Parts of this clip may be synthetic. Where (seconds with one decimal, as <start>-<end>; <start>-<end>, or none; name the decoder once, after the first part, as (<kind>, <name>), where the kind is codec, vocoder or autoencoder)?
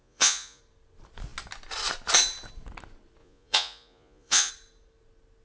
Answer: 0.0-0.6 (vocoder, Vocos); 3.2-4.5